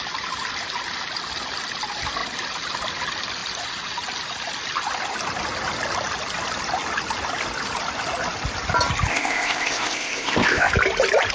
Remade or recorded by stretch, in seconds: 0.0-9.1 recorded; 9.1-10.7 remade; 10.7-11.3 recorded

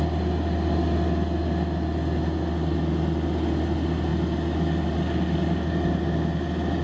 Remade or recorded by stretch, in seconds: 0.0-6.8 recorded

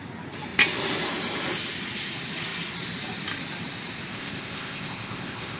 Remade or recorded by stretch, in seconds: 0.0-4.1 recorded; 4.1-5.6 remade

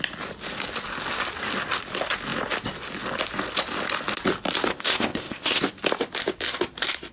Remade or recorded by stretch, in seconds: 0.0-4.7 recorded; 4.7-5.6 remade; 5.6-7.1 recorded

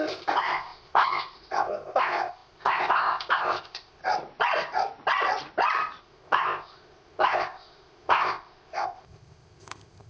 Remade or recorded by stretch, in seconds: 0.0-4.0 remade; 4.0-6.0 recorded; 6.0-10.1 remade

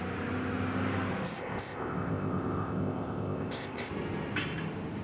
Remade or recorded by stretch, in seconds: 0.0-1.4 recorded; 1.4-3.9 remade; 3.9-5.0 recorded

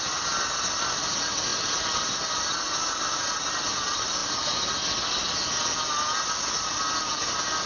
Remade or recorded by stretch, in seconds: 0.0-7.7 recorded

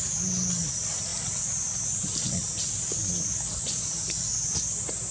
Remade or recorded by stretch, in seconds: 0.0-5.1 recorded